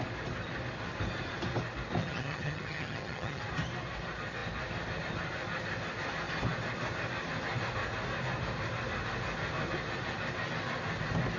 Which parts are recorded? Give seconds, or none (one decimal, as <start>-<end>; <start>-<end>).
0.0-2.0; 3.4-11.4